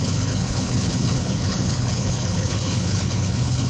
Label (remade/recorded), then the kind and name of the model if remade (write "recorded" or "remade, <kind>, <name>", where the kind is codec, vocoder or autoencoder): remade, codec, HILCodec